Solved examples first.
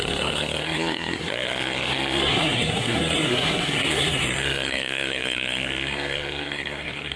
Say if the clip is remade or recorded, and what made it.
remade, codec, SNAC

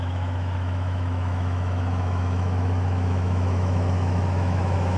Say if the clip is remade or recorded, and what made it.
remade, autoencoder, DAC-VAE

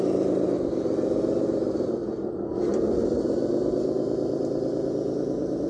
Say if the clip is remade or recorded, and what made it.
recorded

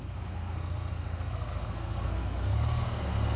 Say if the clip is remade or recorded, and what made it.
remade, codec, SNAC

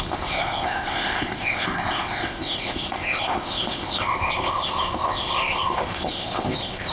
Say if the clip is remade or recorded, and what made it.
remade, codec, ZipCodec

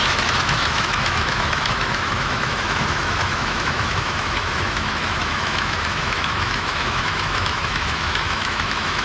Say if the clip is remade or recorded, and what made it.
remade, autoencoder, DAC-VAE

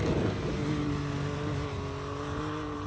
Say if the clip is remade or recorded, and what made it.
recorded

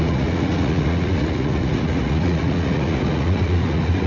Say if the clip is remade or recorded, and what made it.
remade, vocoder, Vocos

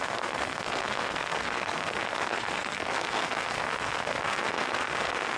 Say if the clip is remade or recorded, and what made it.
remade, codec, SNAC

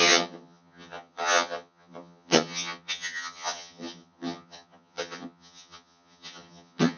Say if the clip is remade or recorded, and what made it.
remade, vocoder, HiFi-GAN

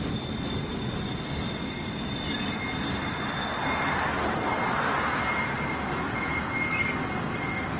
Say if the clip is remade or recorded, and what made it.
recorded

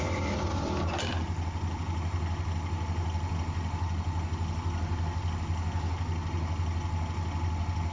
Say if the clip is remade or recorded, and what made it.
recorded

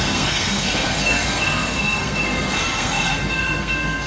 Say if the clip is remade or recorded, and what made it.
remade, codec, SNAC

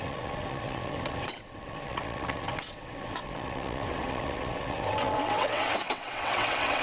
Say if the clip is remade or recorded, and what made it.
remade, vocoder, WaveNeXt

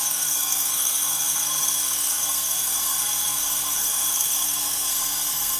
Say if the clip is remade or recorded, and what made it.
remade, codec, SNAC